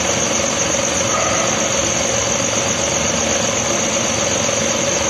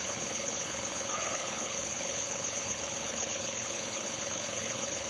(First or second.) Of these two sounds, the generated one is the second